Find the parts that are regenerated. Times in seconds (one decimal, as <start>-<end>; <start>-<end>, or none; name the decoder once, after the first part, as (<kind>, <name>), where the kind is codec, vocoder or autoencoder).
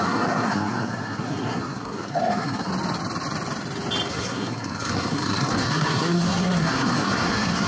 0.0-2.7 (codec, SNAC); 4.1-7.7